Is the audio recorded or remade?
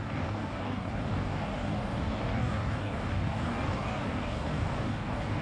remade